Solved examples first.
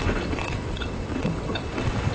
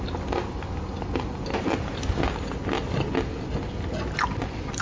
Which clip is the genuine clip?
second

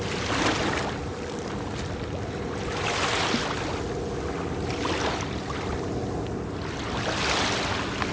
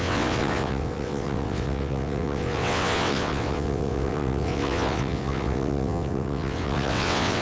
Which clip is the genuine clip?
first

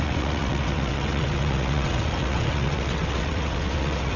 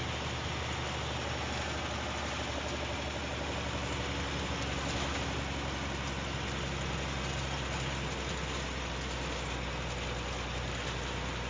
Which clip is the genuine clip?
second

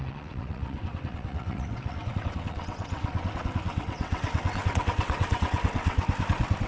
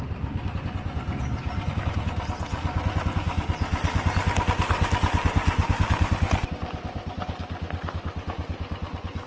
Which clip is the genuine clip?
second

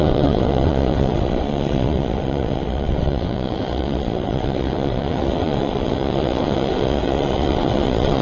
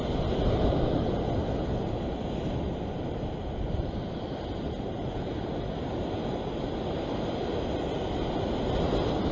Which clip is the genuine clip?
second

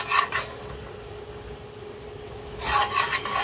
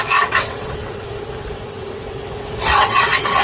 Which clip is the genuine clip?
first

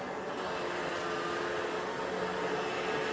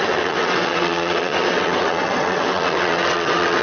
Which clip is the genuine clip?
first